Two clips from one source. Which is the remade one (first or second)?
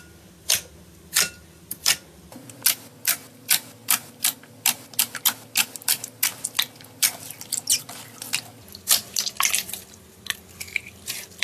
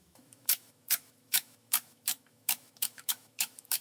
second